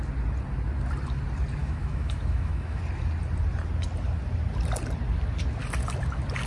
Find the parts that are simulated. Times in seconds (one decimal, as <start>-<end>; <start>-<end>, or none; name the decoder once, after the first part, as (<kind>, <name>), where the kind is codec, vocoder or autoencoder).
1.6-2.8 (autoencoder, DAC-VAE)